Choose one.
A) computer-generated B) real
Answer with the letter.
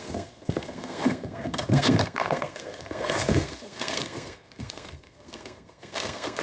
A